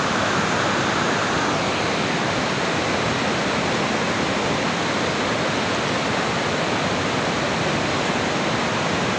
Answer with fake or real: real